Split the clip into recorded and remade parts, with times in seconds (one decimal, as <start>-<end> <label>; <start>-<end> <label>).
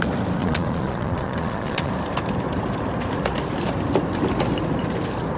0.0-0.4 recorded; 0.4-1.9 remade; 1.9-5.4 recorded